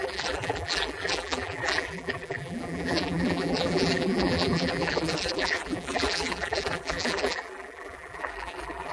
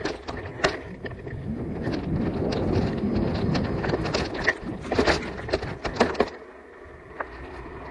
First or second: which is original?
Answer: second